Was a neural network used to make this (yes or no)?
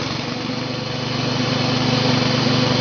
no